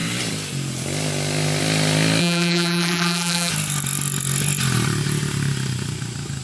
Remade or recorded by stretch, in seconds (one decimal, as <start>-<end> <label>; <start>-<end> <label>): 0.0-2.2 recorded; 2.2-3.5 remade; 3.5-6.4 recorded